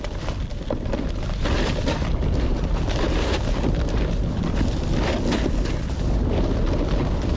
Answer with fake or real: real